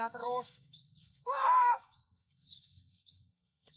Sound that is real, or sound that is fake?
fake